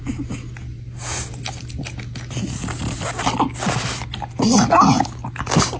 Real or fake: real